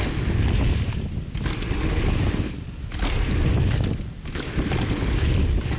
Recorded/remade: recorded